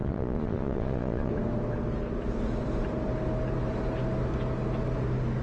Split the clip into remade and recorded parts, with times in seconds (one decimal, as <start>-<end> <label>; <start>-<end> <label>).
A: 0.0-1.3 remade; 1.3-5.4 recorded